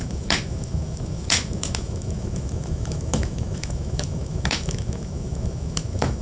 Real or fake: fake